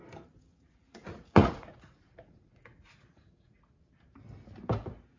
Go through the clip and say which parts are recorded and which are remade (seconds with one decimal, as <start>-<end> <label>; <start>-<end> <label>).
0.0-0.5 recorded; 0.5-3.6 remade; 3.6-5.2 recorded

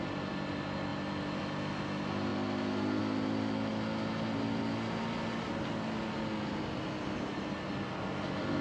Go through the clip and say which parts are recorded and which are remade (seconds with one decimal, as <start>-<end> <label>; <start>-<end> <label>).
0.0-8.6 recorded

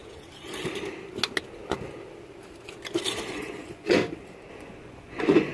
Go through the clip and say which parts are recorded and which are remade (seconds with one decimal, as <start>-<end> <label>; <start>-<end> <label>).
0.0-3.3 recorded; 3.3-4.0 remade; 4.0-4.5 recorded; 4.5-5.5 remade